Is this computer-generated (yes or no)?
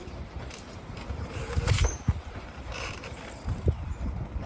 yes